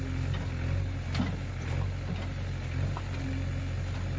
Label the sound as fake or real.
real